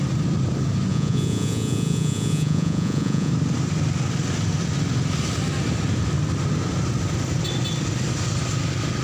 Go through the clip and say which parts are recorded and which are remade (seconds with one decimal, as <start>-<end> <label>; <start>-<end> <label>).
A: 0.0-0.9 recorded; 0.9-3.3 remade; 3.3-9.0 recorded